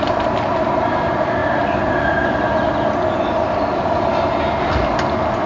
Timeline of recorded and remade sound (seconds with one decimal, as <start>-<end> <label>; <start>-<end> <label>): 0.0-5.5 recorded

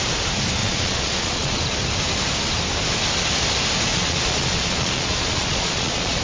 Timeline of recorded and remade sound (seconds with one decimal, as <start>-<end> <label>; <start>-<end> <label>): 0.0-0.6 recorded; 0.6-1.6 remade; 1.6-3.9 recorded; 3.9-6.2 remade

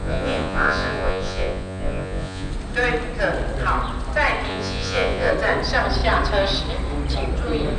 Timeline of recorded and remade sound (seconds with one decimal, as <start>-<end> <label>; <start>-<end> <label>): 0.0-2.5 remade; 2.5-4.5 recorded; 4.5-5.3 remade; 5.3-7.8 recorded

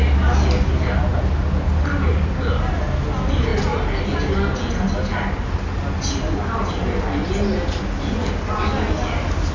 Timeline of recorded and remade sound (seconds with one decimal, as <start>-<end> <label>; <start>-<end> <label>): 0.0-9.5 recorded

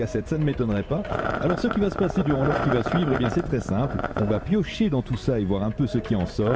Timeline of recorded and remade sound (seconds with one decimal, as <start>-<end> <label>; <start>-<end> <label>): 0.0-5.2 remade; 5.2-6.0 recorded; 6.0-6.6 remade

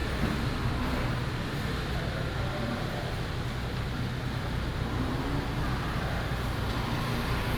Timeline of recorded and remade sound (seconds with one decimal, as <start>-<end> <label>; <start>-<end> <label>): 0.0-7.6 recorded

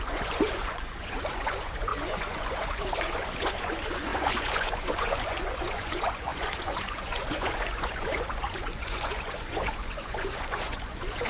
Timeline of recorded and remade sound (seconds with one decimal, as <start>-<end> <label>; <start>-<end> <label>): 0.0-11.3 remade

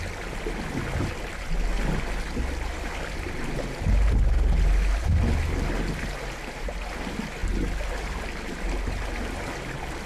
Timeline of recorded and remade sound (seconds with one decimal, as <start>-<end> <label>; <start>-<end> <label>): 0.0-10.1 recorded